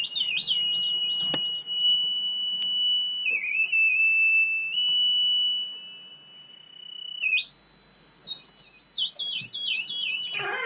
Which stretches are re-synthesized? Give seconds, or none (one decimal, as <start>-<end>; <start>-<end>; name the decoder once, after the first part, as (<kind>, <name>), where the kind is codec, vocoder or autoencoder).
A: none